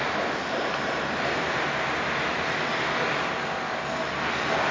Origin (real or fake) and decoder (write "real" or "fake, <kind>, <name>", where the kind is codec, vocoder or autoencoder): real